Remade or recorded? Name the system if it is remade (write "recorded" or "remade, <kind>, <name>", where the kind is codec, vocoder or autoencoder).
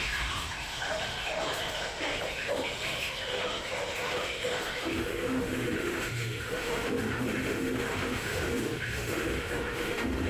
remade, autoencoder, DAC-VAE